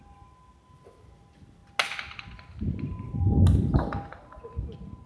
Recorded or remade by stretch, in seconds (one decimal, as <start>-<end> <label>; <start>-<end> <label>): 0.0-5.1 recorded